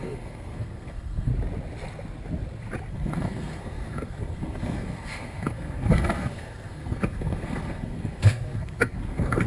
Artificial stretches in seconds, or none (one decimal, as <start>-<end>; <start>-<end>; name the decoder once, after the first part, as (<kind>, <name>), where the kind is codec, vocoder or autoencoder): 0.0-1.3 (codec, SNAC); 2.9-9.5